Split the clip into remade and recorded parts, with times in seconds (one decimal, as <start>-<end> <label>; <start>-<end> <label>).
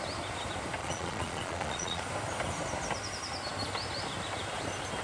0.0-0.8 recorded; 0.8-2.0 remade; 2.0-5.0 recorded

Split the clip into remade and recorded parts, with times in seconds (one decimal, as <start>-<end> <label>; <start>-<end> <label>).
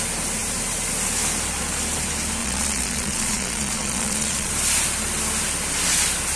0.0-2.4 recorded; 2.4-4.5 remade; 4.5-6.4 recorded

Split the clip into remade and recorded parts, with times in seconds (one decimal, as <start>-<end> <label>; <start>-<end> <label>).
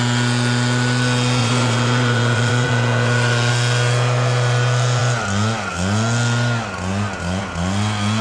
0.0-1.4 recorded; 1.4-3.5 remade; 3.5-8.2 recorded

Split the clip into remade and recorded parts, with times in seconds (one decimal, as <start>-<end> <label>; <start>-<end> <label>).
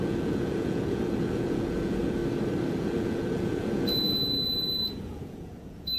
0.0-2.2 remade; 2.2-2.7 recorded; 2.7-6.0 remade